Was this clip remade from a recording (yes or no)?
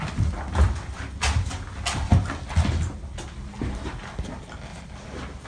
no